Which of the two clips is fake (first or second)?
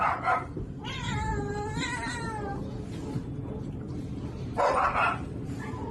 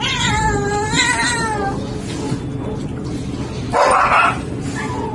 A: first